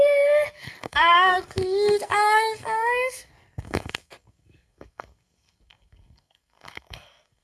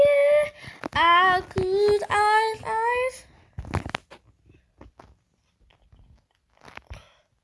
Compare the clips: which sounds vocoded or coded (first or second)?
first